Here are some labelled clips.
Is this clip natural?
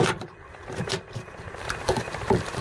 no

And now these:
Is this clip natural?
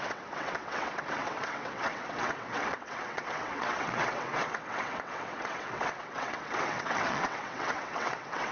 no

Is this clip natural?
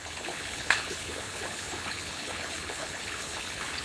no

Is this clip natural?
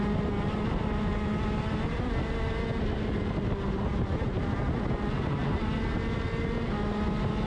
yes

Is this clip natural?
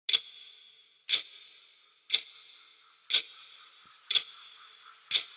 yes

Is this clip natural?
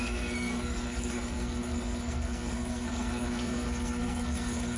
no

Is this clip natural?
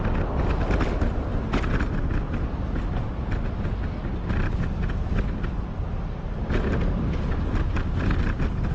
yes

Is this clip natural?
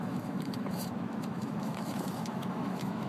no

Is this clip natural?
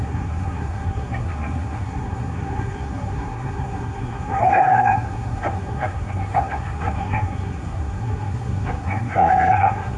no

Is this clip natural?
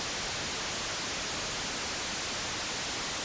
yes